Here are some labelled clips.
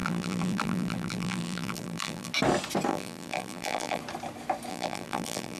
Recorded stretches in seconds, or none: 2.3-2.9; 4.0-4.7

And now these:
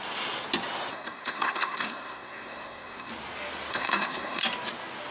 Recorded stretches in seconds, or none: 0.0-0.9; 3.1-3.7; 4.4-5.1

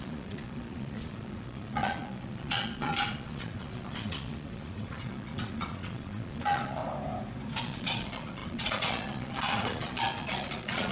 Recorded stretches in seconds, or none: 6.8-7.6

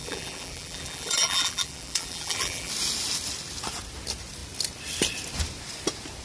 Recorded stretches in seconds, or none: 2.7-6.2

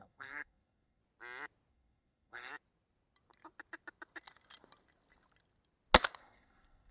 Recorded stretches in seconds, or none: 1.0-1.7; 2.5-6.2